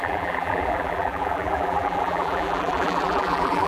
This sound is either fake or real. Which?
fake